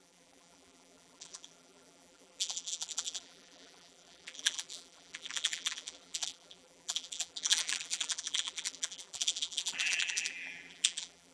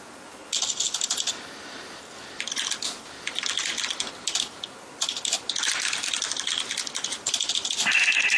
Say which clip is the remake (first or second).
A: first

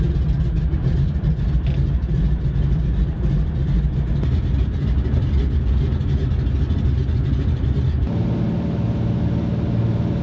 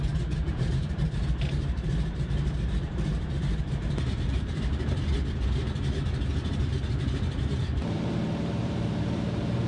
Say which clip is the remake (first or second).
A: second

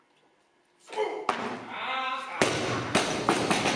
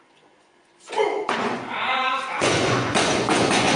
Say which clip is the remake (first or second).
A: second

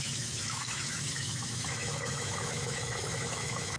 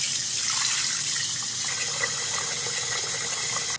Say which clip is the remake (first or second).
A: first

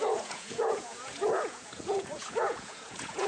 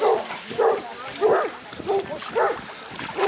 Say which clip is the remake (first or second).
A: first